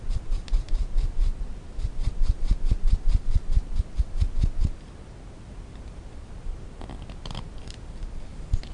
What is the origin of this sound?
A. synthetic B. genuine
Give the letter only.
B